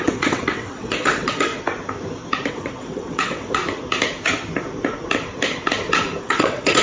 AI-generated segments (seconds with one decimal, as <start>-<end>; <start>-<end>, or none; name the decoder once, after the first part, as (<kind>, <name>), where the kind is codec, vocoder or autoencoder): 0.0-1.5 (vocoder, WaveNeXt); 2.5-3.6; 6.2-6.8